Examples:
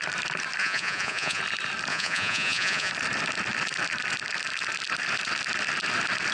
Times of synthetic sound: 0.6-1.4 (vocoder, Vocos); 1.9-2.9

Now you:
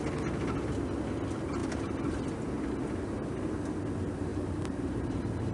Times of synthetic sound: 4.3-5.5 (vocoder, BigVGAN v2)